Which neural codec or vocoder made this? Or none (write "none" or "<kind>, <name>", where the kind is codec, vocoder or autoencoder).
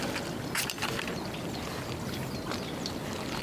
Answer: none